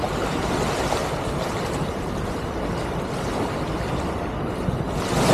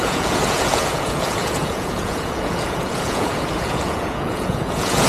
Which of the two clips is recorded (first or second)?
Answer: first